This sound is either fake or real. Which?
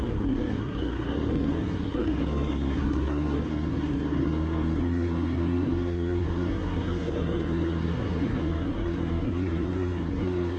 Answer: fake